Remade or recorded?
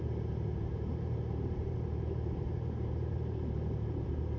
remade